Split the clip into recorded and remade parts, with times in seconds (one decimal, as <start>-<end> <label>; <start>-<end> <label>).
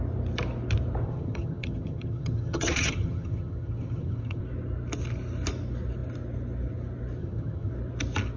0.0-1.0 recorded; 1.0-4.4 remade; 4.4-7.2 recorded; 7.2-7.7 remade; 7.7-8.4 recorded